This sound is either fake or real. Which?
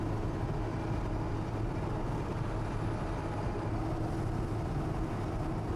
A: real